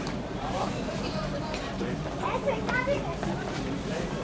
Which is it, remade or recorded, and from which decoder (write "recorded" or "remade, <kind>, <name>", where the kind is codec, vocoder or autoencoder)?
remade, vocoder, BigVGAN v2